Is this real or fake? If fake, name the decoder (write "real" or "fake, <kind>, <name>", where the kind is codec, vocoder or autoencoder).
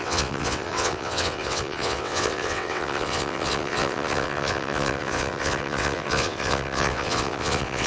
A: fake, vocoder, WaveNeXt